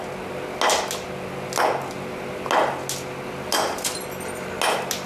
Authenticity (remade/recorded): recorded